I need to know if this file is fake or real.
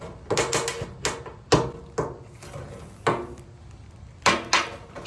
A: real